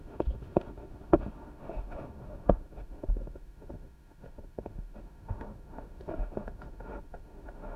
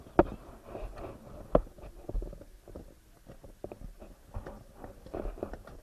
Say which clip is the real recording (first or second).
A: second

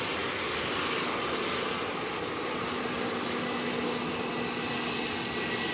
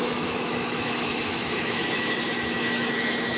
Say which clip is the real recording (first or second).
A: first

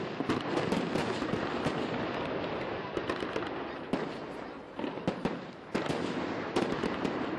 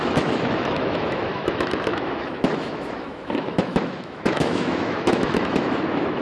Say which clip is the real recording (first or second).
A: first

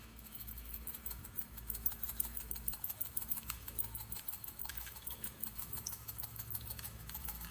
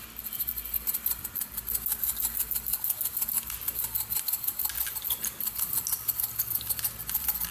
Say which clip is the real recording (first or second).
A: second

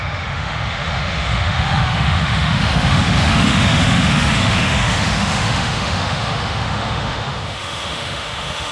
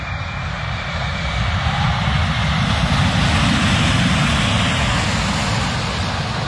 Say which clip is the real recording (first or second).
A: second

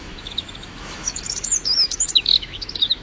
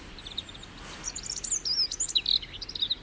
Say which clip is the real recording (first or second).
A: second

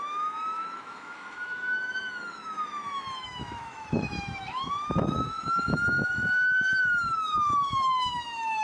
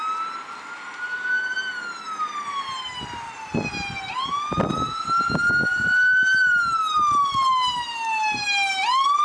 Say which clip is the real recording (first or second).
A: second